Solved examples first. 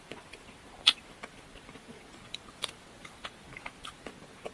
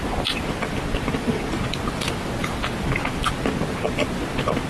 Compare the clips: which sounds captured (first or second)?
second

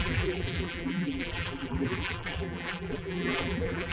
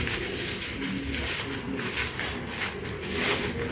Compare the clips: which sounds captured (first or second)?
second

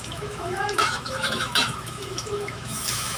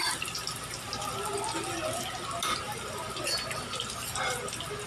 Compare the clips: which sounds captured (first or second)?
second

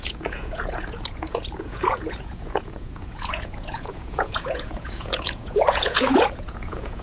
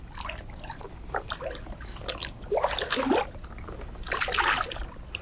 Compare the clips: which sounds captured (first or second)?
second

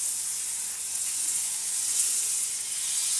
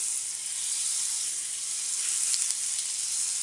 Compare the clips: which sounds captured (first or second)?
second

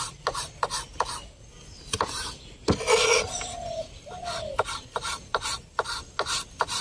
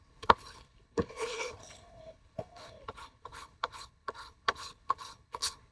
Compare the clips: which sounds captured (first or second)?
first